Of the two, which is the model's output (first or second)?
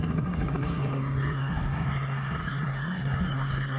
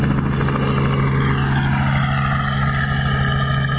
first